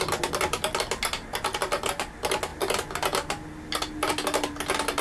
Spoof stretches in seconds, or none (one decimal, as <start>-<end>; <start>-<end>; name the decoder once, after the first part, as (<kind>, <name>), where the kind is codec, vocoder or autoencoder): none